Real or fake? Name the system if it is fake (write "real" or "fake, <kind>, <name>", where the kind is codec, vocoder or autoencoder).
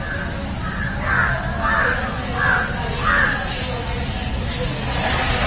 real